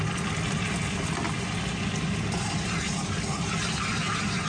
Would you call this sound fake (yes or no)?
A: no